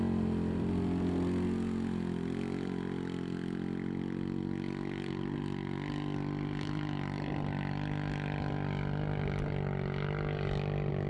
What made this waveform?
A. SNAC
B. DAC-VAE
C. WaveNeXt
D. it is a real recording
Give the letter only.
D